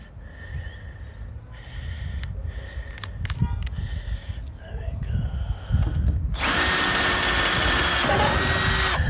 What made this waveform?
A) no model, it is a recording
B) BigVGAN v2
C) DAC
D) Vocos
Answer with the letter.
A